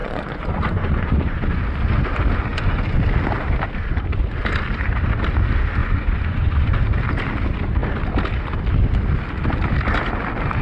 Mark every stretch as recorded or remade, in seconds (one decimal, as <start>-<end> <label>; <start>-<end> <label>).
0.0-1.6 remade; 1.6-2.5 recorded; 2.5-3.0 remade; 3.0-5.8 recorded; 5.8-6.7 remade; 6.7-10.6 recorded